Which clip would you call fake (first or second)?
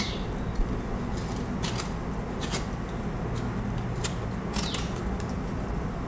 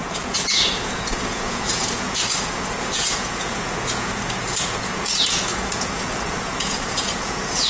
second